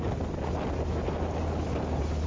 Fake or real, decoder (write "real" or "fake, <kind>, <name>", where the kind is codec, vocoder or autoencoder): real